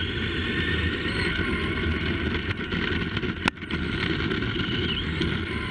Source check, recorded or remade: recorded